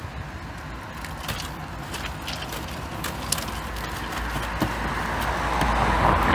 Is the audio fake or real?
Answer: real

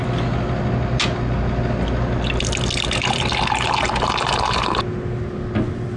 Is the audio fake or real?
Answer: real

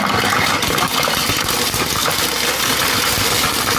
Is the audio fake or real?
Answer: real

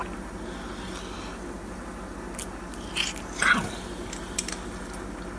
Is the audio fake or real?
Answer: real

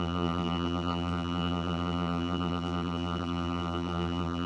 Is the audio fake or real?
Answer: fake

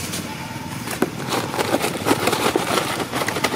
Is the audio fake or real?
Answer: fake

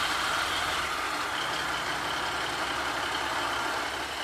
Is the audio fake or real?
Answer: real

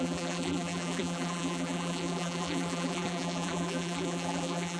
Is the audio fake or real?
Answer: fake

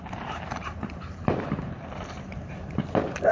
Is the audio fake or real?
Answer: fake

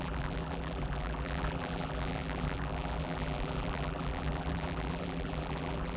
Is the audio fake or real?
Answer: fake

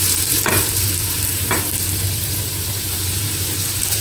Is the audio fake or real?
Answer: fake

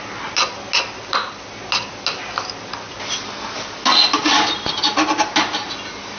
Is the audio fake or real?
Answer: real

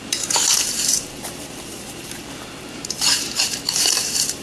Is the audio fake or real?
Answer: fake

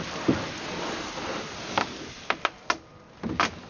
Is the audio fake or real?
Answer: real